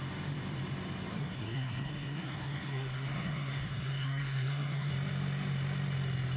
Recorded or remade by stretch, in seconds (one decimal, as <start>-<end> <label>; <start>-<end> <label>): 0.0-1.1 recorded; 1.1-4.9 remade; 4.9-6.4 recorded